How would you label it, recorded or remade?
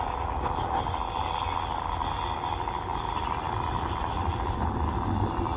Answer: recorded